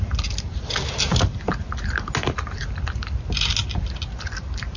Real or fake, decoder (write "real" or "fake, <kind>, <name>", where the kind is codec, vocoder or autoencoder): real